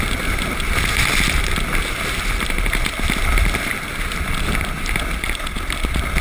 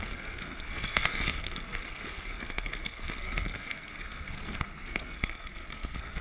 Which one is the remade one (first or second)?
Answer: second